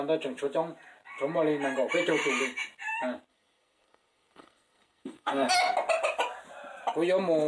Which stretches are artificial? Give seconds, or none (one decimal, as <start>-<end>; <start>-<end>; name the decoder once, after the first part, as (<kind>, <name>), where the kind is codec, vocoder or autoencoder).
3.3-5.5 (codec, SNAC)